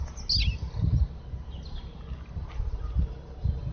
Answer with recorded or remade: recorded